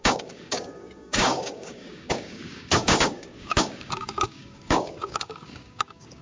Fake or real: fake